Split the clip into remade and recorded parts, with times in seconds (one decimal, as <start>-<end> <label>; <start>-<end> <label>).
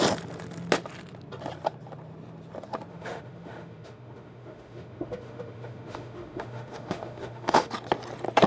0.0-2.9 recorded; 2.9-7.7 remade; 7.7-8.5 recorded